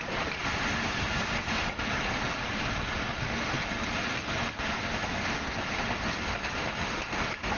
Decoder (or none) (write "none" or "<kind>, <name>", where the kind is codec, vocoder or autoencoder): none